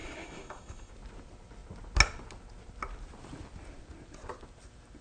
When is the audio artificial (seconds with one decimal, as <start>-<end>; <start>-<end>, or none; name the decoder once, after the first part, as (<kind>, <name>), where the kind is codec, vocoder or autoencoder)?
0.0-0.9 (autoencoder, DAC-VAE)